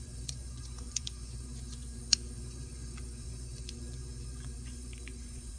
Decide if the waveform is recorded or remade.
remade